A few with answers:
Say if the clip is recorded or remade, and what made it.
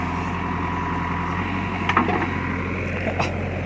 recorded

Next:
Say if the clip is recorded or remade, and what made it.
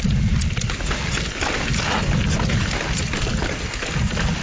recorded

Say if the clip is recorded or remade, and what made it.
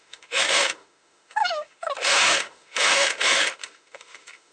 remade, autoencoder, DAC-VAE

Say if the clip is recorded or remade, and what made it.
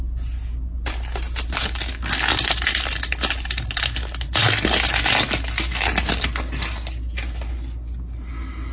recorded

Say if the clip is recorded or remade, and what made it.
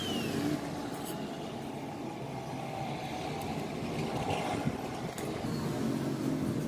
recorded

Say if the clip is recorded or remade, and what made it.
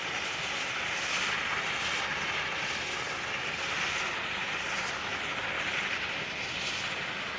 recorded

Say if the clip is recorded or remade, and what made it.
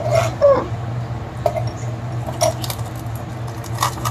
recorded